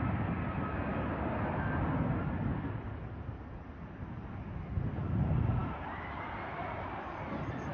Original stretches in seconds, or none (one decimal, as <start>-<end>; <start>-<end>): 0.0-7.7